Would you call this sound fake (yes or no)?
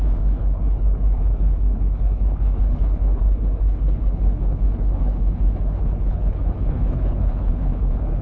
yes